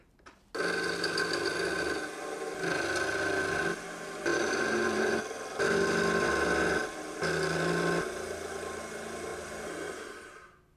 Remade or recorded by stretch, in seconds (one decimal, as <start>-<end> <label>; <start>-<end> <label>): 0.0-4.3 recorded; 4.3-5.2 remade; 5.2-10.8 recorded